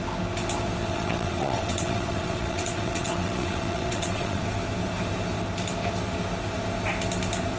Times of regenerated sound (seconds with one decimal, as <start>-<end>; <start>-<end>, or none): 0.8-4.4

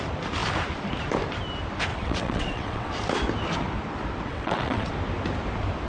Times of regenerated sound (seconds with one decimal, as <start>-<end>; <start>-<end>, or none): 1.9-2.9; 4.3-4.9

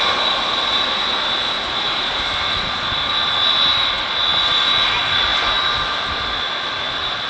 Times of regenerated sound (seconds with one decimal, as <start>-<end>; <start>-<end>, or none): none

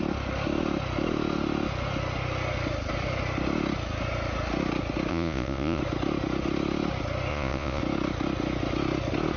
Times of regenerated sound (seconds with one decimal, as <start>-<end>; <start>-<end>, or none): 5.1-5.8; 7.3-7.8

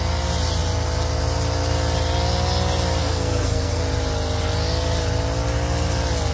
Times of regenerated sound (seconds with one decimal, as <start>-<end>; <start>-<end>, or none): 3.0-3.8

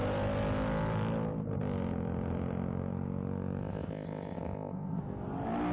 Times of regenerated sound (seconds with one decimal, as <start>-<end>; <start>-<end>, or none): 3.6-5.0

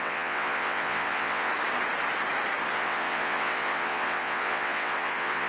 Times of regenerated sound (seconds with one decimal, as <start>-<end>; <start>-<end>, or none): 0.0-1.5; 2.7-5.5

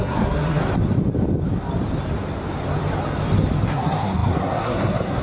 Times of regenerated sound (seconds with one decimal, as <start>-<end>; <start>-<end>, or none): 0.0-0.6; 3.7-5.2